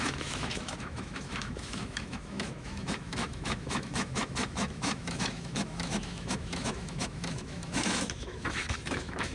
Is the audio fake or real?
fake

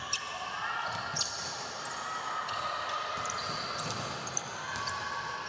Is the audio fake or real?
real